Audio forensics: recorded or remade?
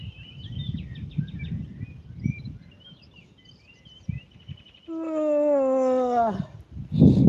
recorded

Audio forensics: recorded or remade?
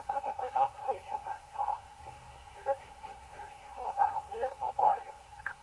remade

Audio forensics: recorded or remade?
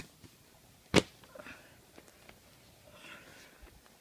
recorded